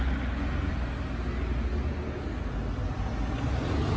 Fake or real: real